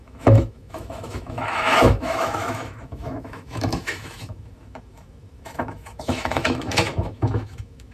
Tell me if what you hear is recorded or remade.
remade